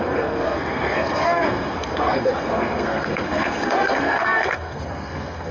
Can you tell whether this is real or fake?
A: fake